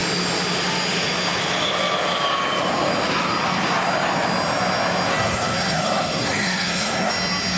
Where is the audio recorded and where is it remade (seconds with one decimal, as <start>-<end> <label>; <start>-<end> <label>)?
0.0-5.1 recorded; 5.1-7.1 remade; 7.1-7.6 recorded